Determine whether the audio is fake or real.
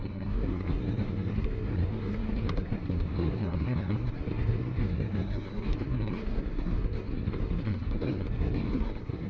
fake